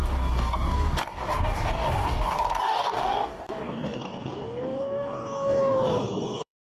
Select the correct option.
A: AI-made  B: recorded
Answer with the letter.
A